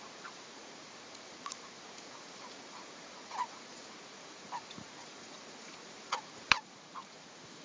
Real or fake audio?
fake